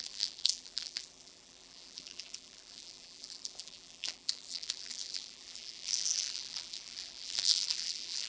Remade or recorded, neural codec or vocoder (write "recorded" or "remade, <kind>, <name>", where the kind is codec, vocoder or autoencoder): remade, vocoder, BigVGAN v2